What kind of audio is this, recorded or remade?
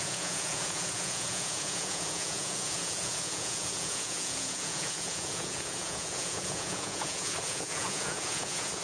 remade